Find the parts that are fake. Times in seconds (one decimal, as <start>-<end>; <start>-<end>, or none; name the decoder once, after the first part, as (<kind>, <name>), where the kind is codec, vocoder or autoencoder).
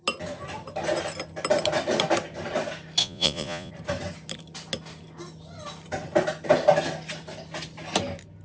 3.0-3.7 (vocoder, Vocos)